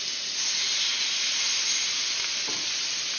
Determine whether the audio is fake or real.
real